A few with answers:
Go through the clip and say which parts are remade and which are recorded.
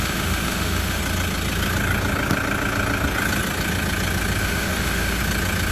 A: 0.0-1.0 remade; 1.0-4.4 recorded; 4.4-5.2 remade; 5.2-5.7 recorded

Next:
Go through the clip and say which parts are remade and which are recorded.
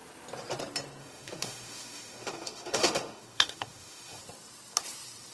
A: 0.0-1.0 recorded; 1.0-4.2 remade; 4.2-5.3 recorded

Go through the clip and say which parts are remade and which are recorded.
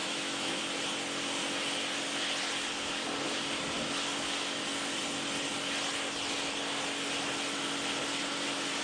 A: 0.0-0.6 remade; 0.6-8.8 recorded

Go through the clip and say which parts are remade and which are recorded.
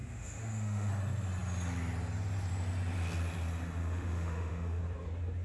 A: 0.0-0.9 remade; 0.9-3.8 recorded; 3.8-4.8 remade; 4.8-5.4 recorded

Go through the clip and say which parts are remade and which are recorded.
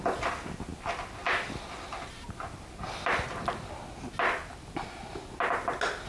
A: 0.0-6.1 recorded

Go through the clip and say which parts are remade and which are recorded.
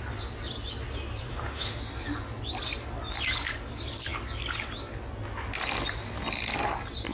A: 0.0-1.3 recorded; 1.3-1.8 remade; 1.8-7.1 recorded